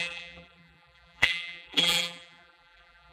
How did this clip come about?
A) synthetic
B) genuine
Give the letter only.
A